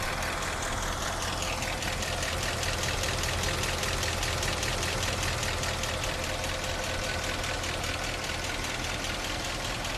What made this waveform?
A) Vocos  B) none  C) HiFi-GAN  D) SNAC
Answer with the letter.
B